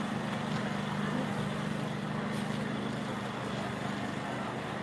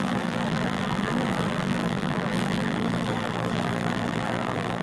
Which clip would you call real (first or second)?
first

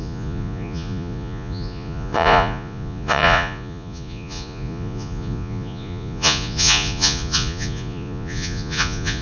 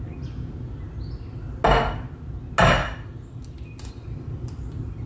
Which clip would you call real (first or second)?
second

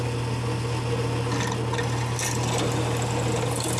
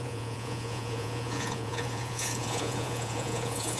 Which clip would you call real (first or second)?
first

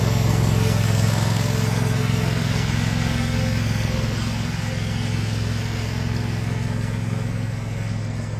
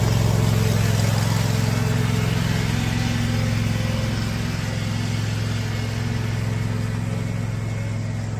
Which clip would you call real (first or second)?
second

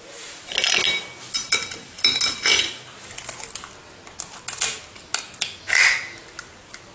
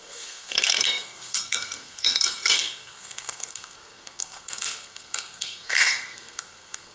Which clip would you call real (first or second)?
first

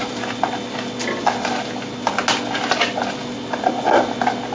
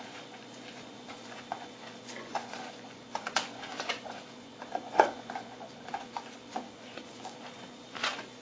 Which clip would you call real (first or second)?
first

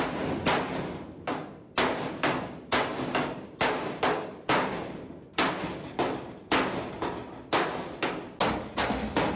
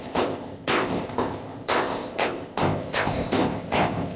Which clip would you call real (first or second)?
first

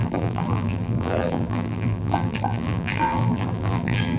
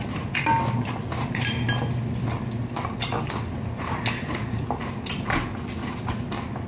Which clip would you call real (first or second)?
second